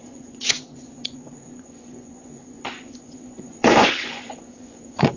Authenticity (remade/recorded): remade